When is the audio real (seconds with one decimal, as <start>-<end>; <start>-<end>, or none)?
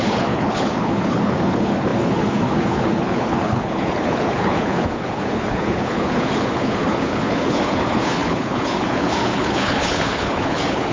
none